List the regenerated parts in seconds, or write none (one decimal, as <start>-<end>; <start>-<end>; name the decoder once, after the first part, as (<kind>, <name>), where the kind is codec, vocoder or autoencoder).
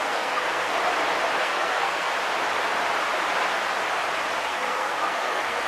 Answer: 0.0-0.8 (codec, SNAC); 1.4-2.1; 4.4-5.7